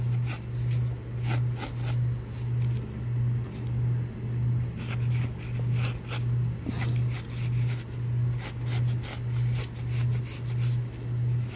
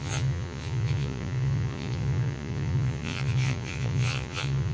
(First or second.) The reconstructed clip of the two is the second